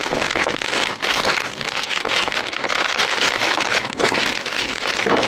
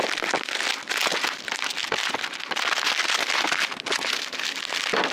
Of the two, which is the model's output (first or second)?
first